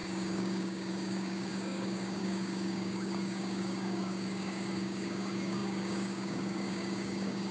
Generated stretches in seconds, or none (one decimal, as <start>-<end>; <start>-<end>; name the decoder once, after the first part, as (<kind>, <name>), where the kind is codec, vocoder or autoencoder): 0.0-7.5 (codec, DAC)